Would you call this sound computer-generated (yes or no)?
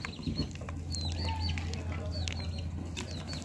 no